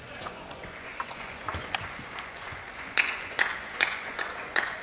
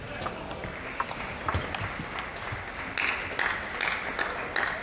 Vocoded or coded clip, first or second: first